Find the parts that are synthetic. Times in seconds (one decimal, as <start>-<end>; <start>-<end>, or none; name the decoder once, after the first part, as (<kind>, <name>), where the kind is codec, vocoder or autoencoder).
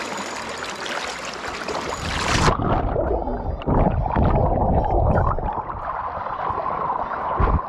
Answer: none